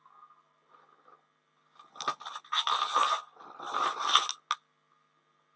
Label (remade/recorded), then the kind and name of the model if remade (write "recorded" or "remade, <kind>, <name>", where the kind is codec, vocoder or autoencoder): recorded